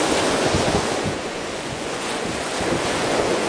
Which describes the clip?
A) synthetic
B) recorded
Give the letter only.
A